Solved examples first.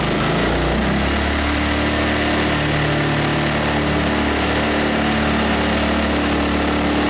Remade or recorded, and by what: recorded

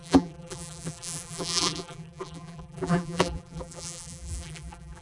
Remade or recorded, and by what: remade, vocoder, BigVGAN v2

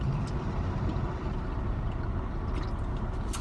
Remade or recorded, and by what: recorded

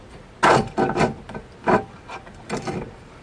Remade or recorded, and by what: recorded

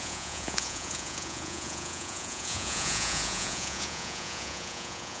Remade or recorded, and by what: remade, vocoder, Vocos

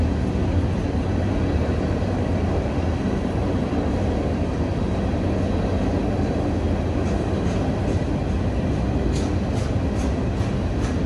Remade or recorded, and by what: recorded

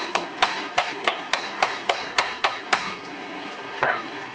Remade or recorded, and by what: remade, codec, SNAC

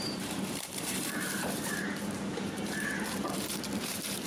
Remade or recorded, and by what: remade, vocoder, BigVGAN v2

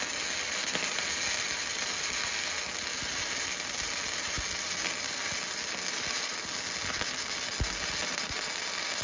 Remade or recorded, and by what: recorded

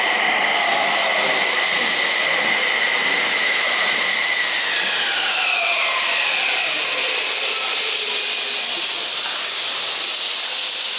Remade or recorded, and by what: recorded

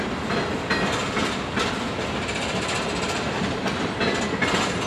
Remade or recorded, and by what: recorded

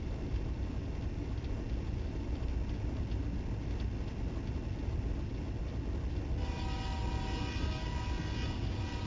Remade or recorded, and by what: recorded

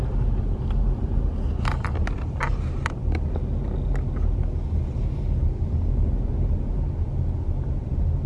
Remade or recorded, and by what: recorded